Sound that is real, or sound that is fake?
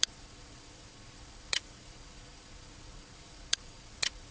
fake